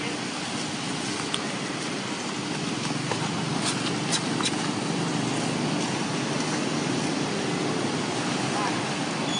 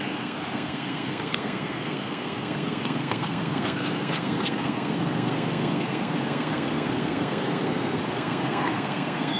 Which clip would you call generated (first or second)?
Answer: second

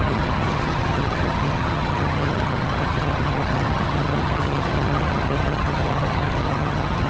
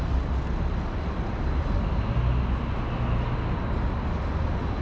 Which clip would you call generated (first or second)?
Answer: first